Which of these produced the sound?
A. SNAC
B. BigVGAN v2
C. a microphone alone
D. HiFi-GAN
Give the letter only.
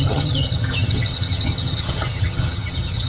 D